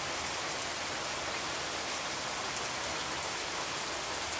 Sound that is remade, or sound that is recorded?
recorded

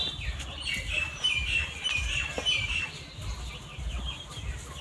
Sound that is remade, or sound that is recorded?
remade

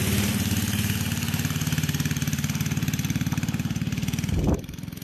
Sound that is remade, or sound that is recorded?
remade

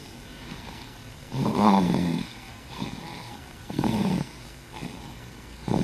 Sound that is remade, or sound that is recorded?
remade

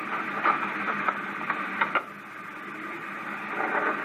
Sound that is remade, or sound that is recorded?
recorded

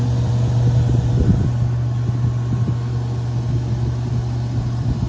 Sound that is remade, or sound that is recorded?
recorded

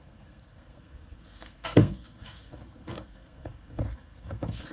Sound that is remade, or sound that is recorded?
remade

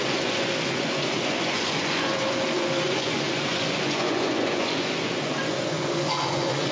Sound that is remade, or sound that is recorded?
remade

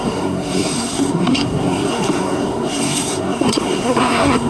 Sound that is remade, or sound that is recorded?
remade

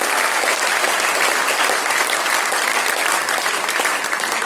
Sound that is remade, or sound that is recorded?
recorded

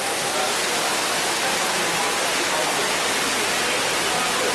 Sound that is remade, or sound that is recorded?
recorded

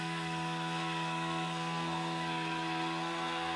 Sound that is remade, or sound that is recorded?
remade